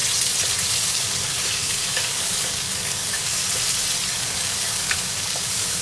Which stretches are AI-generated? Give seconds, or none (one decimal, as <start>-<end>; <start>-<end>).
0.9-3.4; 4.1-5.8

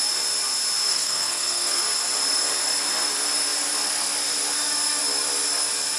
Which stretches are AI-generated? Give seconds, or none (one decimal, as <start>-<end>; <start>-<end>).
0.9-1.8

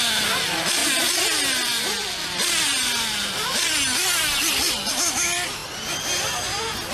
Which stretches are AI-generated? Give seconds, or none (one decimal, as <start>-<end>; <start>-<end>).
none

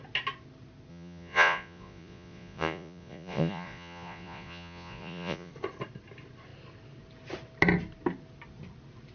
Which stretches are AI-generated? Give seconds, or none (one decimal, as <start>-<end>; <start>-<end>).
0.9-5.5

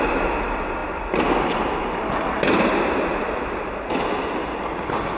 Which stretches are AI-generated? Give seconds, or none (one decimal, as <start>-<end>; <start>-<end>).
none